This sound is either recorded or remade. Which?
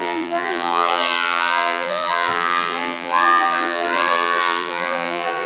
remade